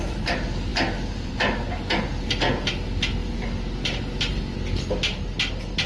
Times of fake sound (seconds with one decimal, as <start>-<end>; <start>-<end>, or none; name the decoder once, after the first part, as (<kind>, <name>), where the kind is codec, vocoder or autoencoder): none